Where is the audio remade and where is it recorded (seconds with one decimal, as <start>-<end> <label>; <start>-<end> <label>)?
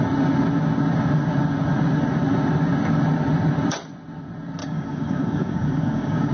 0.0-4.6 recorded; 4.6-6.3 remade